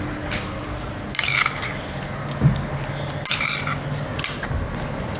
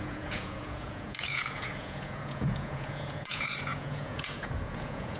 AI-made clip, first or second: second